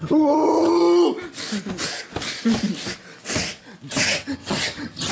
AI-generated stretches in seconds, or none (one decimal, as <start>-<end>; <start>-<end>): 0.0-0.8; 3.9-5.1